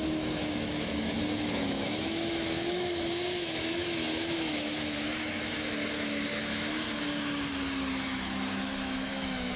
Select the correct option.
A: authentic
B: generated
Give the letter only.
B